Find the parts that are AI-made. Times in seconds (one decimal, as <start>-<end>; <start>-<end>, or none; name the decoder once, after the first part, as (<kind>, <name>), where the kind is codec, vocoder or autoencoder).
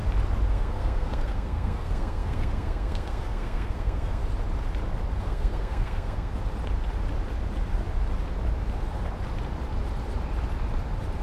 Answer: 0.5-4.2 (codec, SNAC); 5.2-6.3